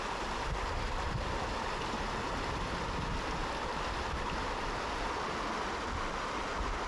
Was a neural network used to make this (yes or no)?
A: no